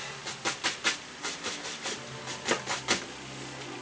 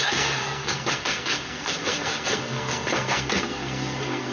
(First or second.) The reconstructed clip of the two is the second